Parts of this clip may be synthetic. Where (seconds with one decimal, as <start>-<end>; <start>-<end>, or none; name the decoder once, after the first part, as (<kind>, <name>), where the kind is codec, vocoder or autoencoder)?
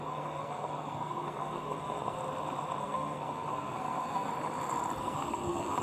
0.0-2.2 (codec, SNAC); 2.8-4.3; 5.0-5.8